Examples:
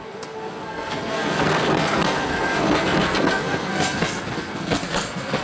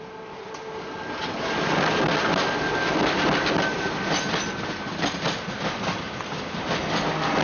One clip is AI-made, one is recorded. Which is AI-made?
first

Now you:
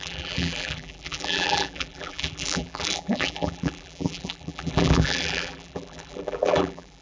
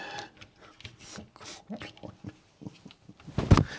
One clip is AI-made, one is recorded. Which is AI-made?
first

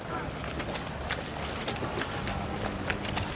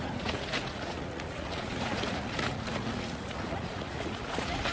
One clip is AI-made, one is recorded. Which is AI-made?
second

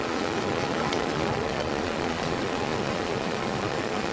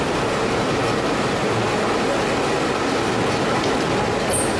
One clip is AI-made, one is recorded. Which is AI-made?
first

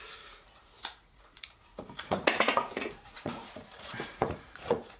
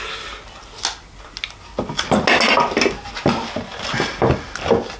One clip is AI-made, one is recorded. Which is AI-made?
first